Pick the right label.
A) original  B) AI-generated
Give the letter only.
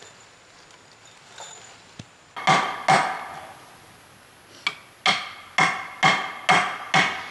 A